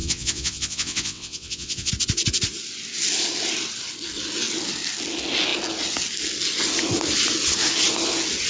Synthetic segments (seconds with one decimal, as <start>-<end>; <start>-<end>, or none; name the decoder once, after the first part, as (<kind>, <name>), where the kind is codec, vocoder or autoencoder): 0.0-1.9 (vocoder, WaveNeXt)